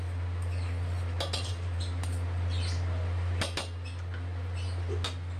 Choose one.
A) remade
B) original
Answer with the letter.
B